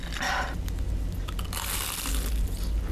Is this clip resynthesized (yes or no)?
no